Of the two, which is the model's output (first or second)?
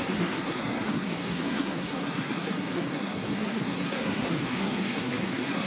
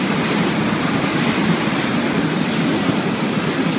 first